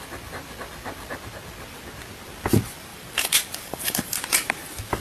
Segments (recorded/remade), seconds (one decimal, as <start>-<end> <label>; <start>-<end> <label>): 0.0-2.9 recorded; 2.9-4.5 remade; 4.5-5.0 recorded